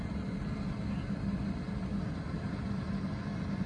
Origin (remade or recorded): recorded